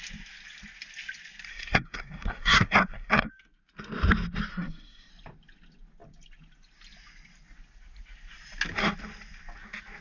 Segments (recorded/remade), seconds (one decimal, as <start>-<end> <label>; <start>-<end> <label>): 0.0-1.5 recorded; 1.5-3.3 remade; 3.3-4.5 recorded; 4.5-5.1 remade; 5.1-10.0 recorded